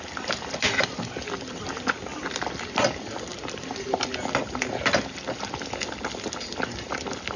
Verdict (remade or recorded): recorded